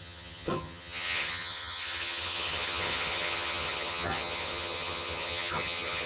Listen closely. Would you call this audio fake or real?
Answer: fake